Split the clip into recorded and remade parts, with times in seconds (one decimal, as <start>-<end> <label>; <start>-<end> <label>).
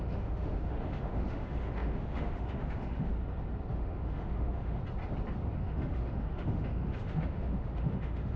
0.0-3.1 remade; 3.1-3.7 recorded; 3.7-4.8 remade; 4.8-5.4 recorded; 5.4-8.4 remade